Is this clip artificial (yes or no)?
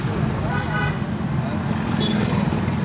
no